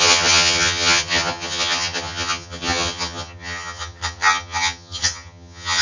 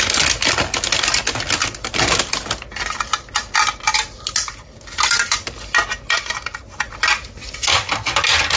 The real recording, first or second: second